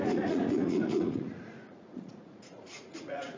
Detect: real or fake fake